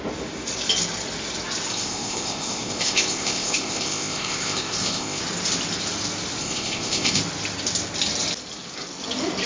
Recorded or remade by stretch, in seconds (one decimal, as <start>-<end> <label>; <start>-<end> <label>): 0.0-1.7 recorded; 1.7-5.2 remade; 5.2-6.4 recorded; 6.4-7.2 remade; 7.2-9.5 recorded